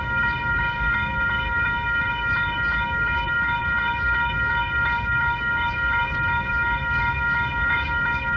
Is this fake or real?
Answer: fake